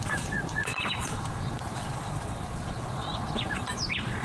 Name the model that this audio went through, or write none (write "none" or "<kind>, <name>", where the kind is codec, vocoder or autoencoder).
vocoder, Vocos